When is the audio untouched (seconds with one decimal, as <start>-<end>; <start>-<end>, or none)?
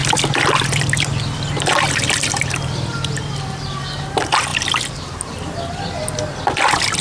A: 0.0-1.1; 4.5-5.6